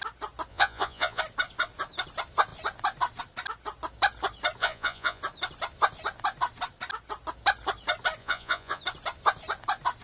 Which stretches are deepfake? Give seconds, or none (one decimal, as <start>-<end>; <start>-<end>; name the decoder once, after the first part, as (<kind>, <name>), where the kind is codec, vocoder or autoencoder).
0.5-1.2 (vocoder, Vocos); 4.6-5.2; 8.2-8.8